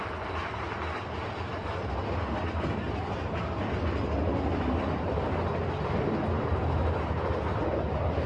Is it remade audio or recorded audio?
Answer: recorded